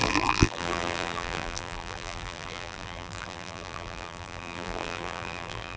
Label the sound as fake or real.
fake